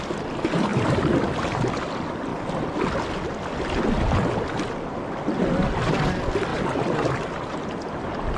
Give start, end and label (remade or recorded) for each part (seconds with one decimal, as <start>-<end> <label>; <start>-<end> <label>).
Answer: 0.0-8.4 recorded